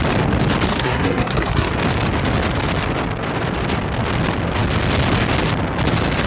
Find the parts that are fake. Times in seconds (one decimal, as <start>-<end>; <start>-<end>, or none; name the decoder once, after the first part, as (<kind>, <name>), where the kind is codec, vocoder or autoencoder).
0.7-1.7 (codec, SNAC)

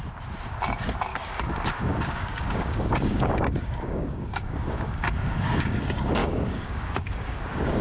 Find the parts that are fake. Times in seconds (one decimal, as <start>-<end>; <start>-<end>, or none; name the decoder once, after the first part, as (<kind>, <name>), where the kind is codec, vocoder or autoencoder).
1.1-5.8 (codec, DAC); 6.2-7.8

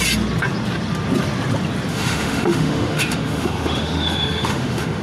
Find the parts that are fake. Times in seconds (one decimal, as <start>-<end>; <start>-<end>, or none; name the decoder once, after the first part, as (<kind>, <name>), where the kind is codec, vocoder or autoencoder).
1.9-5.0 (autoencoder, DAC-VAE)

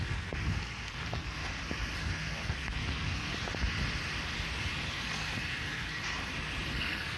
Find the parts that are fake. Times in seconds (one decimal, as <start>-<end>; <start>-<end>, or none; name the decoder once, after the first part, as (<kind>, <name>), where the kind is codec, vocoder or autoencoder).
0.0-1.4 (codec, SNAC); 2.0-3.3; 4.9-6.0; 6.7-7.2

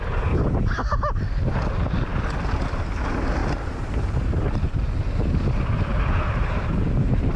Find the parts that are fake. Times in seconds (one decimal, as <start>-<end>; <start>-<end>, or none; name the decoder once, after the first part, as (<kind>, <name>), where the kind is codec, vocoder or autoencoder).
3.4-4.9 (vocoder, BigVGAN v2); 5.9-7.4

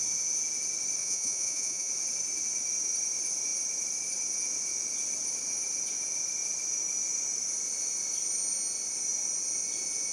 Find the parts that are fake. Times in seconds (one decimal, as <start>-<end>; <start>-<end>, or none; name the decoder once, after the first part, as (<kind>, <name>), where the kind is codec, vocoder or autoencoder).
1.0-1.9 (vocoder, Vocos)

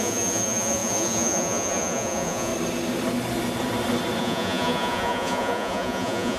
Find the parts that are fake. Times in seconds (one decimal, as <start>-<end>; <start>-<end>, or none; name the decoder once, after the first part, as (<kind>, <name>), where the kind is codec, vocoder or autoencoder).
0.0-2.5 (vocoder, Vocos); 4.2-6.4

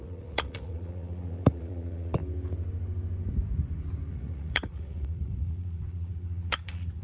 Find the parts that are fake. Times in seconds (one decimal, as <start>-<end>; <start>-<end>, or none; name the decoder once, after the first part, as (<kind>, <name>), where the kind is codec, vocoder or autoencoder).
0.0-2.2 (vocoder, Vocos); 4.1-7.0